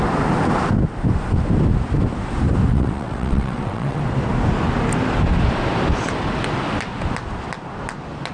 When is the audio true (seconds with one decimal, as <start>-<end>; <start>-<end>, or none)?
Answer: 0.0-2.7; 4.0-8.3